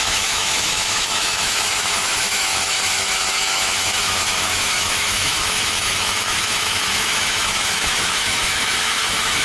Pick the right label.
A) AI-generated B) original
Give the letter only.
A